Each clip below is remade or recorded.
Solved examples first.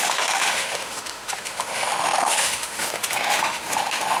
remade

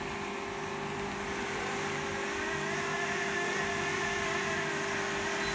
recorded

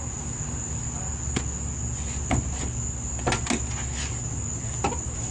recorded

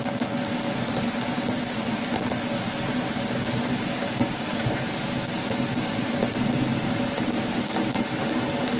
recorded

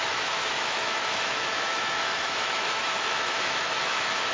remade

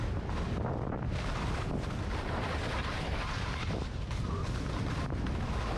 recorded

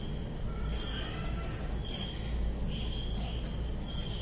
recorded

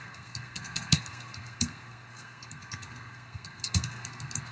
remade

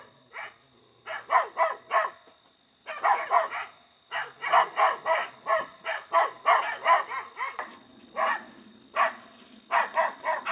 recorded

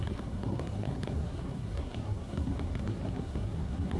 remade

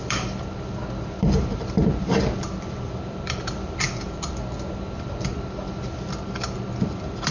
remade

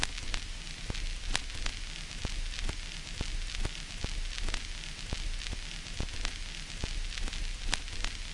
recorded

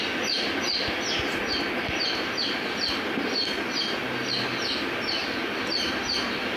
recorded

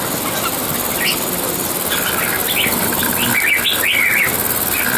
recorded